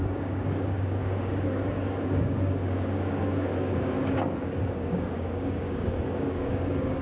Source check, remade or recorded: remade